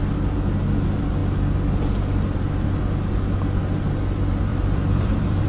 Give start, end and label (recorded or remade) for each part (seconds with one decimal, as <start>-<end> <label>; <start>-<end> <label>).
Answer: 0.0-1.2 recorded; 1.2-2.8 remade; 2.8-4.5 recorded; 4.5-5.5 remade